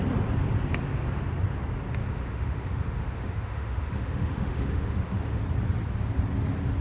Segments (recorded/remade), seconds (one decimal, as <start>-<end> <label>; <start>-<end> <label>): 0.0-2.0 recorded; 2.0-5.4 remade; 5.4-6.8 recorded